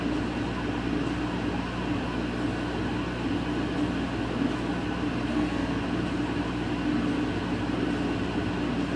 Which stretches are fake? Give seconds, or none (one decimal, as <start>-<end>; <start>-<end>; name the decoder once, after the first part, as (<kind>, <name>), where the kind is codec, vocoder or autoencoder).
5.3-5.8 (codec, SNAC)